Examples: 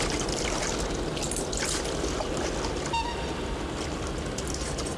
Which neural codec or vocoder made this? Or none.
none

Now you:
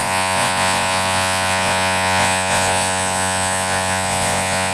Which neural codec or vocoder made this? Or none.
vocoder, Vocos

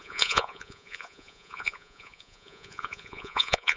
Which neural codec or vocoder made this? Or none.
vocoder, Vocos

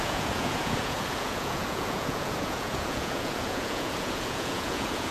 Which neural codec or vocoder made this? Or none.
vocoder, Vocos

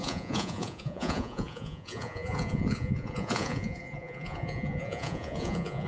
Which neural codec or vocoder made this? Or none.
vocoder, Vocos